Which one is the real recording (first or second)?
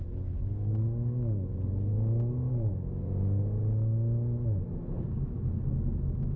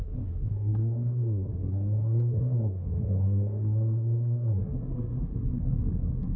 first